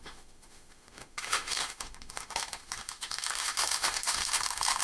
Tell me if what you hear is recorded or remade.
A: remade